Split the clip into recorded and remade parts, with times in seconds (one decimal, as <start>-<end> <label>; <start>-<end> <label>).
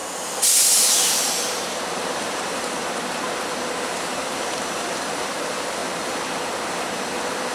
0.0-0.8 recorded; 0.8-2.8 remade; 2.8-3.8 recorded; 3.8-5.8 remade; 5.8-7.5 recorded